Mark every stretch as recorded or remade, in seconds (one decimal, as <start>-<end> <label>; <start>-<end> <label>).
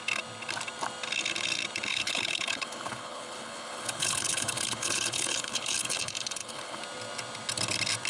0.0-1.9 recorded; 1.9-6.8 remade; 6.8-8.1 recorded